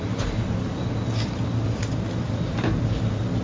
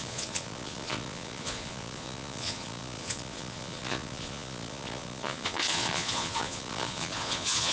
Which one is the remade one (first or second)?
second